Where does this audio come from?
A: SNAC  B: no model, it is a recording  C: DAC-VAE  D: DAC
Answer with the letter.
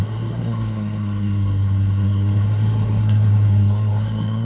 A